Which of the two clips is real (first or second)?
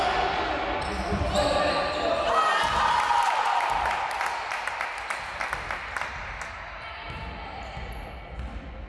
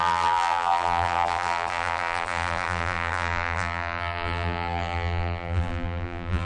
first